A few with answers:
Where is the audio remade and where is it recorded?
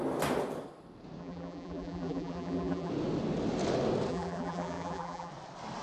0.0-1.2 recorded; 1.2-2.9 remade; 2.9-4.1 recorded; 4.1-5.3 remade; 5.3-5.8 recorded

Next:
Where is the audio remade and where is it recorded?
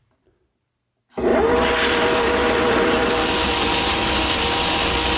0.0-1.3 recorded; 1.3-4.1 remade; 4.1-5.2 recorded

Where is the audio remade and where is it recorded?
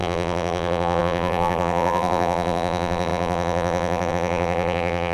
0.0-5.1 remade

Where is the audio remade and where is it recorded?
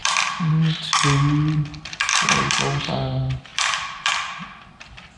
0.0-0.5 remade; 0.5-1.7 recorded; 1.7-2.8 remade; 2.8-3.5 recorded; 3.5-5.2 remade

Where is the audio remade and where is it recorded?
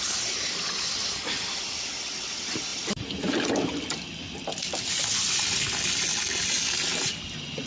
0.0-2.7 recorded; 2.7-4.4 remade; 4.4-7.7 recorded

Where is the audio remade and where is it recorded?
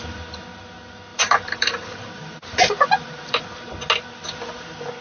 0.0-1.1 recorded; 1.1-3.4 remade; 3.4-5.0 recorded